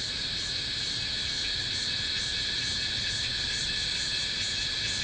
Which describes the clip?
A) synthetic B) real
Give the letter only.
B